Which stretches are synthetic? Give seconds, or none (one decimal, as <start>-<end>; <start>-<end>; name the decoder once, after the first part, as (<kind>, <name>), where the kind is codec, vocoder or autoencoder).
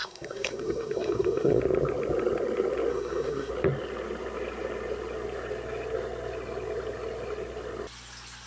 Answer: 0.0-1.6 (codec, SNAC); 2.9-3.5